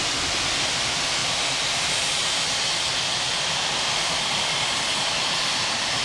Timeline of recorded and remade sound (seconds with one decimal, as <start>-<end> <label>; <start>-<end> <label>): 0.0-6.0 remade